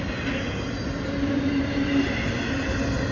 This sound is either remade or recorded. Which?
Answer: recorded